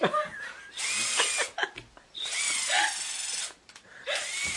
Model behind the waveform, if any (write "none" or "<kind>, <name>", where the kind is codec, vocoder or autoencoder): none